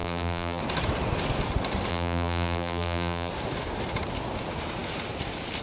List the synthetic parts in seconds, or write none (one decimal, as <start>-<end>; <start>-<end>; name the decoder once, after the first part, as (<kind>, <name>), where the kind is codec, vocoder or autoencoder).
0.0-0.6 (vocoder, BigVGAN v2); 1.9-3.3